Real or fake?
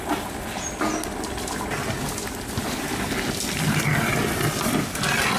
real